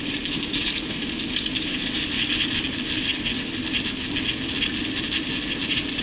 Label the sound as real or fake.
real